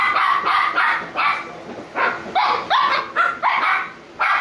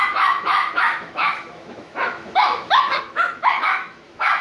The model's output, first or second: second